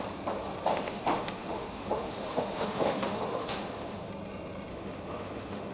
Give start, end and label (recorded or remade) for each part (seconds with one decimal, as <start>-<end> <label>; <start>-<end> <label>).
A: 0.0-0.7 recorded; 0.7-4.1 remade; 4.1-4.7 recorded; 4.7-5.7 remade